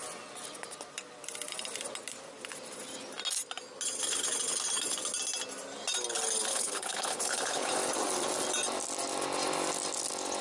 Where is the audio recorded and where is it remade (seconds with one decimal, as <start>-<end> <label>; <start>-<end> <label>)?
0.0-6.5 recorded; 6.5-7.7 remade; 7.7-10.4 recorded